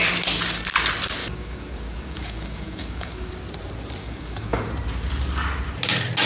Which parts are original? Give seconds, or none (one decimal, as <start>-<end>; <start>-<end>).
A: 0.0-1.2; 3.3-4.0; 4.7-6.3